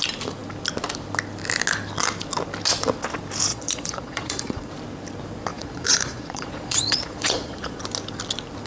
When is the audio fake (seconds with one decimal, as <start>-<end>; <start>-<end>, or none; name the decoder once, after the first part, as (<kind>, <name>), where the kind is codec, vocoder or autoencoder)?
3.5-4.7 (vocoder, Vocos); 5.5-7.8